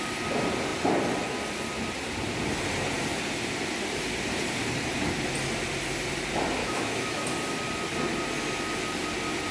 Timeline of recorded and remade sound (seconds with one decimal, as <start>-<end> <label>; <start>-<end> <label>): 0.0-6.6 recorded; 6.6-7.2 remade; 7.2-9.5 recorded